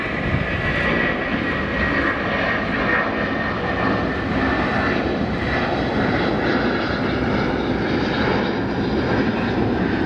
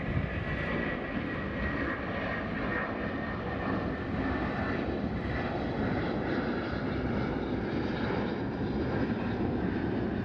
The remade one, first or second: second